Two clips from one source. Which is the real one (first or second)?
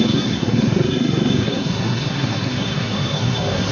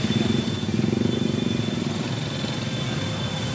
second